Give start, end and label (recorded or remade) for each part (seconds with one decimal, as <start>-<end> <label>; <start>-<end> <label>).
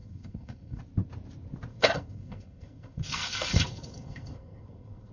0.0-0.8 remade; 0.8-1.7 recorded; 1.7-5.1 remade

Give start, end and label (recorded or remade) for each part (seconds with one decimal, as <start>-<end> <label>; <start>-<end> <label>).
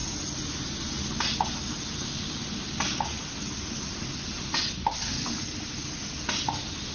0.0-6.9 recorded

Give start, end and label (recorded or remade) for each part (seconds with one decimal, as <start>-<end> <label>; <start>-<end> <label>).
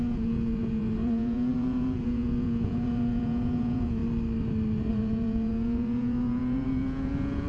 0.0-4.0 remade; 4.0-4.9 recorded; 4.9-7.5 remade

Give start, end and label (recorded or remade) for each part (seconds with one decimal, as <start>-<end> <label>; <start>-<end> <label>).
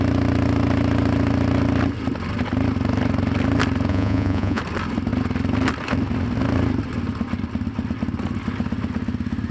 0.0-3.9 recorded; 3.9-4.6 remade; 4.6-9.5 recorded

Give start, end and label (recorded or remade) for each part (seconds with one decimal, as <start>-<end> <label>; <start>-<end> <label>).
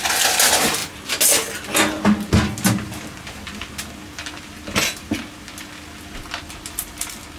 0.0-7.4 recorded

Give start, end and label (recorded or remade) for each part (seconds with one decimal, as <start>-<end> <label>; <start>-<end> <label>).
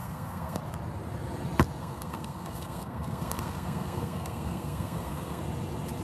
0.0-0.6 remade; 0.6-1.8 recorded; 1.8-5.4 remade; 5.4-6.0 recorded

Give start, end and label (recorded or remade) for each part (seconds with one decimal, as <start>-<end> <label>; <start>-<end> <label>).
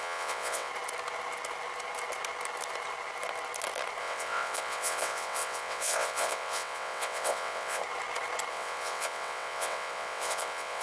0.0-0.7 remade; 0.7-4.0 recorded; 4.0-7.8 remade; 7.8-8.5 recorded; 8.5-10.8 remade